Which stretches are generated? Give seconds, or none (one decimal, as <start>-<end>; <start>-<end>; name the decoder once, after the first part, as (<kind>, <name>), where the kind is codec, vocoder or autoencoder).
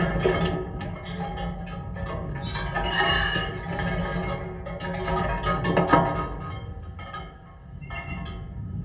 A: none